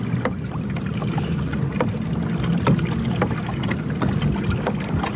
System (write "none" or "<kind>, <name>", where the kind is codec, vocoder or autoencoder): none